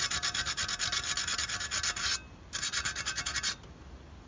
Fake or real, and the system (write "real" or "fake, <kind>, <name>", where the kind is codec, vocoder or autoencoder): real